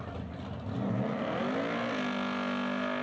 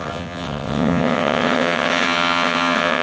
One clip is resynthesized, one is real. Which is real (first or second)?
first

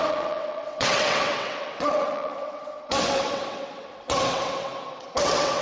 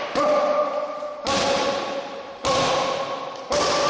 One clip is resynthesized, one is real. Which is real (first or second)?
second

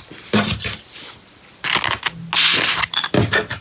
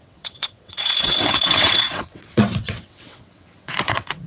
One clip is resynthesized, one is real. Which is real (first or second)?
first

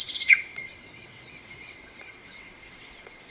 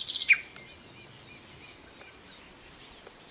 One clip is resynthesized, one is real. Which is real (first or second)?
second